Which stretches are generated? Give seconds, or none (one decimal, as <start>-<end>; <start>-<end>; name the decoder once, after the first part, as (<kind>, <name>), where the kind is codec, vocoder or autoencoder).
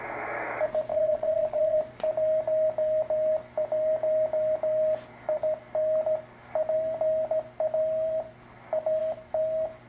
0.9-1.8 (vocoder, Vocos)